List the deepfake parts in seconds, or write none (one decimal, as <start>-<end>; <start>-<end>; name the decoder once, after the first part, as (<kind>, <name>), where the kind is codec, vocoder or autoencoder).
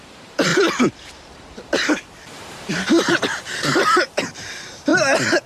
0.0-4.9 (vocoder, BigVGAN v2)